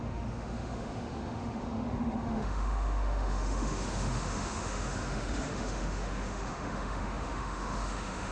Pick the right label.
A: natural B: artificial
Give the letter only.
B